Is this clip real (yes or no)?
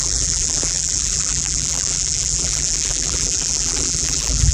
no